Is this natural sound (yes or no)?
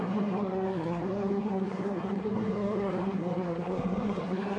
no